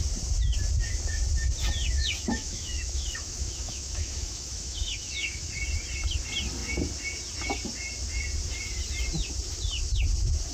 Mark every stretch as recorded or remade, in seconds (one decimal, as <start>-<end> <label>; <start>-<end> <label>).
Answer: 0.0-1.8 recorded; 1.8-5.5 remade; 5.5-10.5 recorded